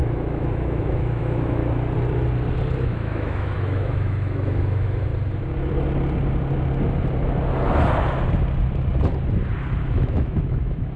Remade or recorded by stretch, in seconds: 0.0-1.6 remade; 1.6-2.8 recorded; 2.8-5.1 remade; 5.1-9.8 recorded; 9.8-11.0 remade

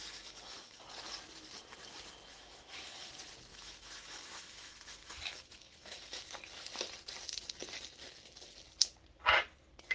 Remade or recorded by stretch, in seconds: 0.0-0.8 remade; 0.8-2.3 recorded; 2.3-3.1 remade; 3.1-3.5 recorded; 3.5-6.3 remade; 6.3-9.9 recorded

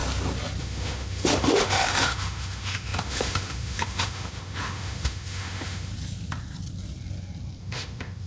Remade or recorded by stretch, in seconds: 0.0-0.6 recorded; 0.6-5.9 remade; 5.9-7.6 recorded; 7.6-8.3 remade

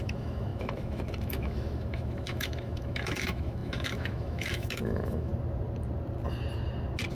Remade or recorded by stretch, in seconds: 0.0-5.3 remade; 5.3-7.1 recorded

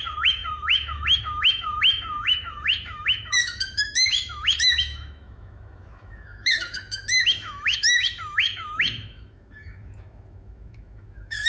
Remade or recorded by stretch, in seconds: 0.0-11.5 remade